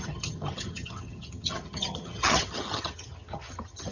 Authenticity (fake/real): fake